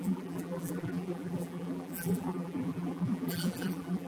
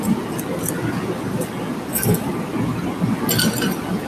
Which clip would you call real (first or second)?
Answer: second